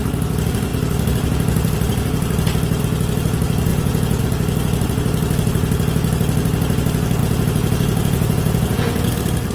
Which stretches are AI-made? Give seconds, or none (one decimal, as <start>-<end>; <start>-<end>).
3.7-4.2; 7.2-9.1